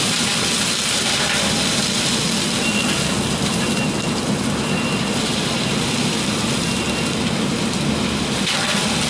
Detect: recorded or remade recorded